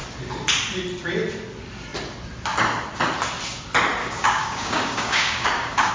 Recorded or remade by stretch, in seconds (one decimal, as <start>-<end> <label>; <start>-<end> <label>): 0.0-4.0 recorded; 4.0-5.9 remade